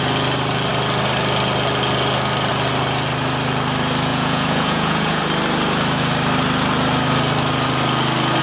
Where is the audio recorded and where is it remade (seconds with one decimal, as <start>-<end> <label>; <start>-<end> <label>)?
0.0-4.1 recorded; 4.1-5.2 remade; 5.2-8.4 recorded